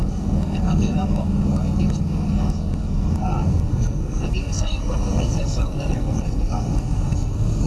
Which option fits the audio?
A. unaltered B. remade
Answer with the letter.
B